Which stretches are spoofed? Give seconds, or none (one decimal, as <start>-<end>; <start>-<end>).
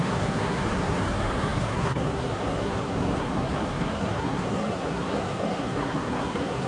0.0-6.7